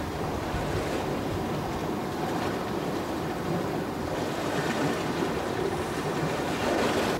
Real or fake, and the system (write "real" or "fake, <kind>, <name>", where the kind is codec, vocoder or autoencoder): real